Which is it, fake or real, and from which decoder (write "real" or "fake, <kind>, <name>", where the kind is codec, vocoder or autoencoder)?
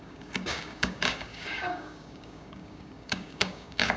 fake, codec, DAC